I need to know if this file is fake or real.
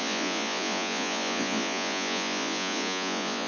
fake